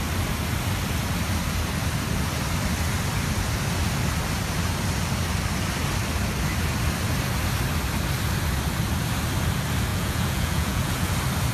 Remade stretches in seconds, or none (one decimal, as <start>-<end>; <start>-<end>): 9.9-11.1